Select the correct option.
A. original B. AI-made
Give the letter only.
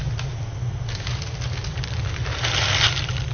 A